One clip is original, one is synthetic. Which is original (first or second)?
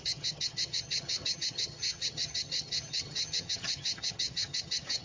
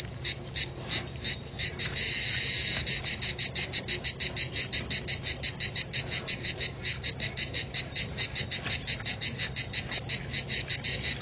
second